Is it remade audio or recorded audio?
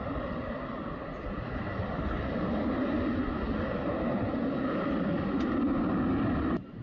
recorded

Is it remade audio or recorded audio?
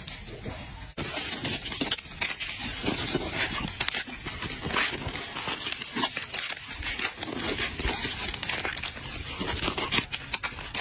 recorded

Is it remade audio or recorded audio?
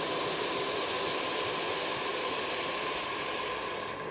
recorded